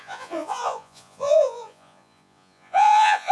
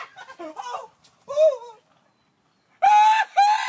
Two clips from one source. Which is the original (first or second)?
second